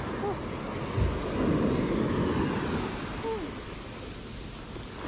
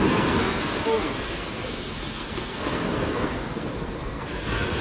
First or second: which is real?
first